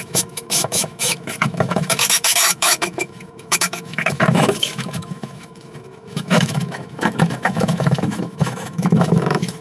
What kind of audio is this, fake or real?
fake